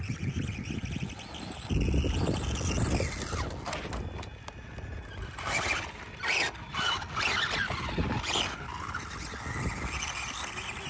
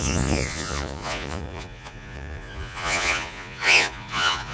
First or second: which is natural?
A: first